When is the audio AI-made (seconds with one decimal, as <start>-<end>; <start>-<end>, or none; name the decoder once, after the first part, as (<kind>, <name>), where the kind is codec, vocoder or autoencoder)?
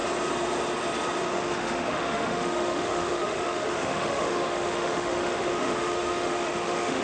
1.3-7.0 (autoencoder, DAC-VAE)